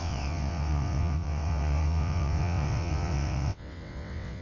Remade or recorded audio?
remade